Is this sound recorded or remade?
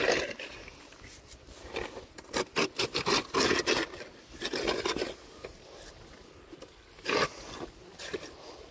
recorded